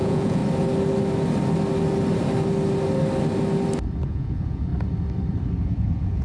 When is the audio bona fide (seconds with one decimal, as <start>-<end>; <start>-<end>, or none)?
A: 0.4-4.1; 4.7-5.6